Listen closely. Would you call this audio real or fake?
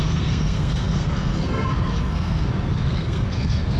fake